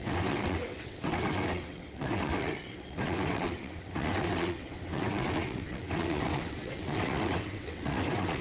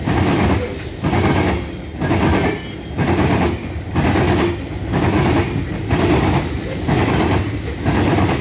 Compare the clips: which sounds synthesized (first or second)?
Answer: first